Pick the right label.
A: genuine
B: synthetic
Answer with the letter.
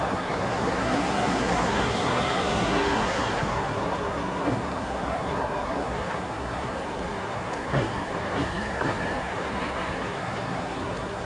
B